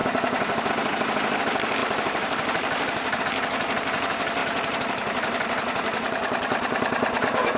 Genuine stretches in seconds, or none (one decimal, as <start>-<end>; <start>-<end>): 0.0-1.8; 3.2-4.4